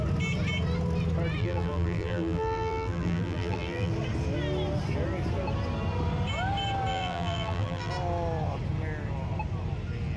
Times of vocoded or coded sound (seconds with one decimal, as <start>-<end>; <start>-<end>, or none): 1.4-3.9; 6.9-7.9